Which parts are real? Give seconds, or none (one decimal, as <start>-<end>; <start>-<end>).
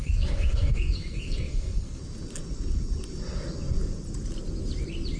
2.0-5.2